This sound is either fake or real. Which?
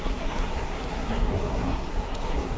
fake